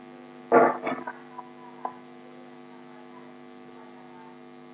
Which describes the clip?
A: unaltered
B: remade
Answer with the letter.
A